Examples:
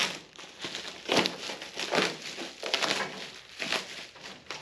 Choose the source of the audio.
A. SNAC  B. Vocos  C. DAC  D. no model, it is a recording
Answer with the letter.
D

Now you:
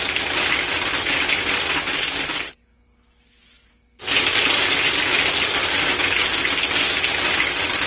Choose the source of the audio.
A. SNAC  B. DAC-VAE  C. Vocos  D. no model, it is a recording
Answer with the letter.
D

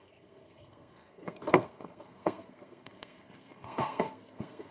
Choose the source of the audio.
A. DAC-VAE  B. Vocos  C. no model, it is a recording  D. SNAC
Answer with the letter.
D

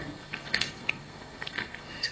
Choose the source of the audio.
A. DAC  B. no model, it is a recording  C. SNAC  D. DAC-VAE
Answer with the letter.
C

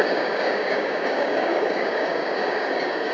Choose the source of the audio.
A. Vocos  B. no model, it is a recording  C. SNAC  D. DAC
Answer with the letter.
D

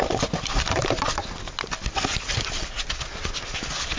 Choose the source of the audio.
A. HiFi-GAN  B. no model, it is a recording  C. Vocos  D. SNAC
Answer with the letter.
B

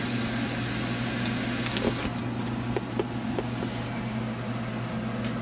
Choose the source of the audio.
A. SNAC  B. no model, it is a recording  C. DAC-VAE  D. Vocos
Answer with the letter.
B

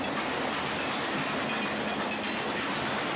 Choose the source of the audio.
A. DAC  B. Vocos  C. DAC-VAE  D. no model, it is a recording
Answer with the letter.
D